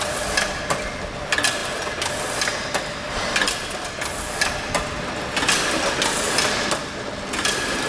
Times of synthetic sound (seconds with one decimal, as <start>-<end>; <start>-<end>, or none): none